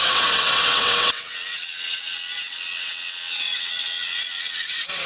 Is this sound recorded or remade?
remade